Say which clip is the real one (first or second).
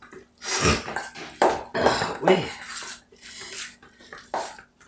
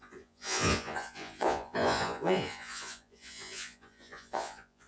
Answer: first